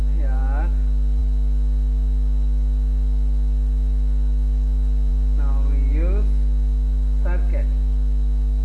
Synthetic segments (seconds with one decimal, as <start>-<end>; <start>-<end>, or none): none